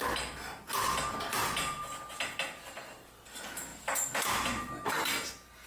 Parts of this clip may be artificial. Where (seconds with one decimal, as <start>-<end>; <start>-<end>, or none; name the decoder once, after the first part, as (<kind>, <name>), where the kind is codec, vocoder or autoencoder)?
1.4-2.2 (vocoder, Vocos)